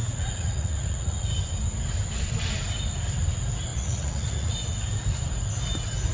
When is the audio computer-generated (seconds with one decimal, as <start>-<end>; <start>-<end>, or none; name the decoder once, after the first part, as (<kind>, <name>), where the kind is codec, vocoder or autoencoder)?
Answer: 0.0-1.3 (vocoder, Vocos); 3.7-4.5